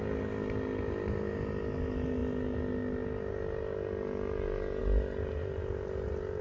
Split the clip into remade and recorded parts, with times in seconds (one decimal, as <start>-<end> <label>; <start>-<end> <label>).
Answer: 0.0-6.4 recorded